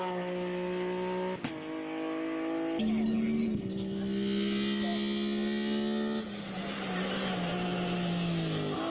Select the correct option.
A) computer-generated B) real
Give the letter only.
B